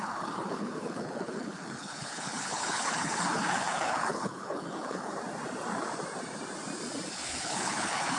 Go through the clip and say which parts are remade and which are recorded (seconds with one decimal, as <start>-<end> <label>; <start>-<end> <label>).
0.0-5.1 remade; 5.1-7.1 recorded; 7.1-8.2 remade